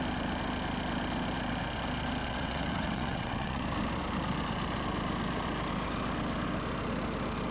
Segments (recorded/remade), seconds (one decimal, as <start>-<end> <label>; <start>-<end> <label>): 0.0-2.2 recorded; 2.2-3.6 remade; 3.6-7.5 recorded